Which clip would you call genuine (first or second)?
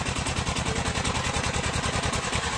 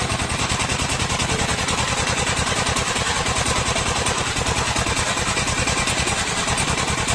first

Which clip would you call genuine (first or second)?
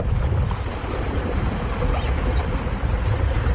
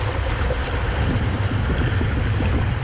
second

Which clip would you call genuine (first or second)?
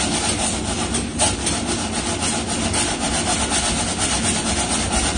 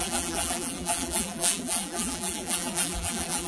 first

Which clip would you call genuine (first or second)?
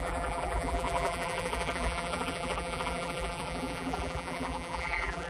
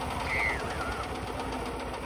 second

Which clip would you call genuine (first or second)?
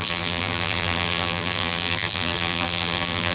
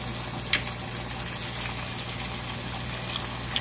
second